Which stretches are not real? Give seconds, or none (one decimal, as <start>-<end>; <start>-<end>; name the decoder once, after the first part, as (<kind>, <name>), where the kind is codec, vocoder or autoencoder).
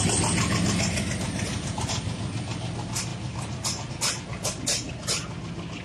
none